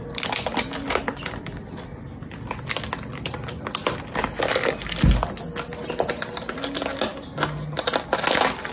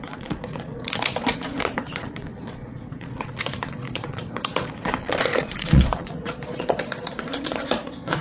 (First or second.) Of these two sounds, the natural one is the first